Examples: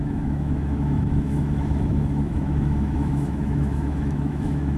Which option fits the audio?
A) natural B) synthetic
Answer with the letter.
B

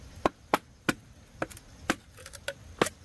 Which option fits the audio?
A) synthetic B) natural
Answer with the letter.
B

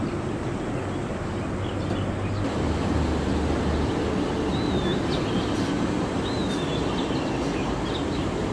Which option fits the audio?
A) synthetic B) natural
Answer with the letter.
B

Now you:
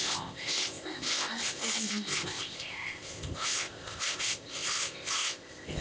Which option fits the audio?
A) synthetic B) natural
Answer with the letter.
A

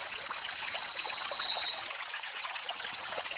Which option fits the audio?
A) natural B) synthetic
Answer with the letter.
B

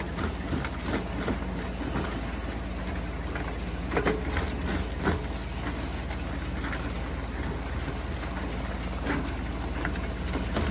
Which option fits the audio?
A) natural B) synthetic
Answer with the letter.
A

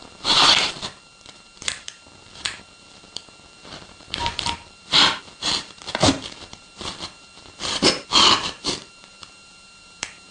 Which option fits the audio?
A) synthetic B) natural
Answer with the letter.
A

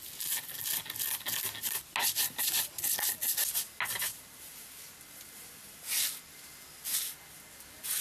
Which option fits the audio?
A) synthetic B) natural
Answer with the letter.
B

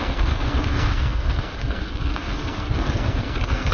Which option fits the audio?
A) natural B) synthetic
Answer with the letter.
B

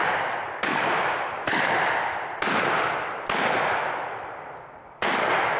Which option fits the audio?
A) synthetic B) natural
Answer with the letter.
B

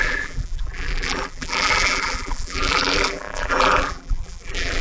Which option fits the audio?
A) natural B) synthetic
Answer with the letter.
B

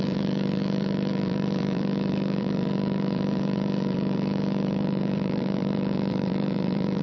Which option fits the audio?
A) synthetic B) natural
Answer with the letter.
A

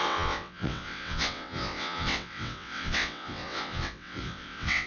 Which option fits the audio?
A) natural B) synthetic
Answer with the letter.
B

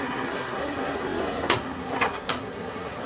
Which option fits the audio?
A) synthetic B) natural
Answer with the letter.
A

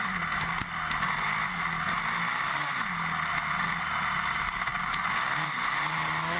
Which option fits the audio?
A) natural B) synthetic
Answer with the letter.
A